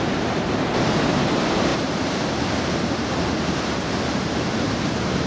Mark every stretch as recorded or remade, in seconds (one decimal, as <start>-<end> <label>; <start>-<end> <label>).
0.0-5.3 remade